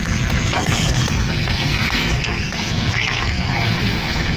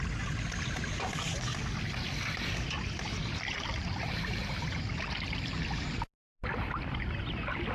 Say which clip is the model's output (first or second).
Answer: first